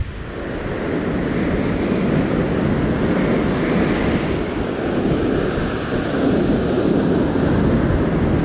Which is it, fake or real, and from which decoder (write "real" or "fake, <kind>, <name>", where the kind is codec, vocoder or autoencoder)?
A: real